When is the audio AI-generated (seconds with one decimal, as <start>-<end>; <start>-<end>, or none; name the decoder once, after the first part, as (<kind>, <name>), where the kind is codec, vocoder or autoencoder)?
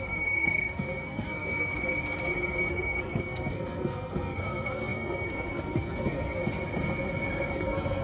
0.0-1.7 (codec, SNAC); 2.7-6.4; 7.5-8.0